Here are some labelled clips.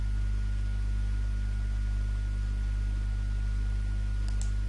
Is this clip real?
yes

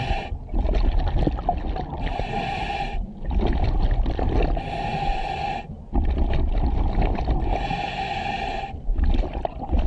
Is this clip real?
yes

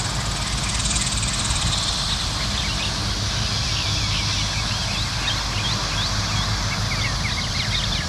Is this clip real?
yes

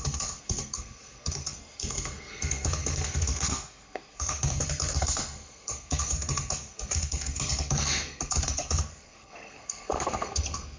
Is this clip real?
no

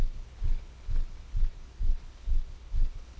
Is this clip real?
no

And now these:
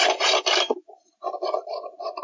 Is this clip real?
yes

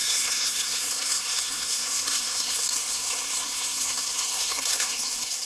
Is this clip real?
no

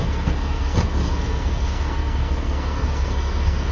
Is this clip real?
no